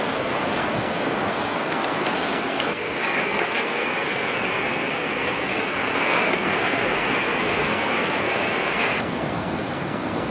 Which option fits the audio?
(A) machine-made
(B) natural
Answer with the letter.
A